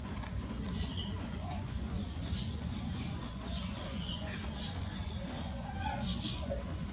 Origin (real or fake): fake